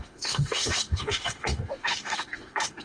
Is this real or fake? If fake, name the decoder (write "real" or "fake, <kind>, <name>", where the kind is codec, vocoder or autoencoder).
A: fake, autoencoder, DAC-VAE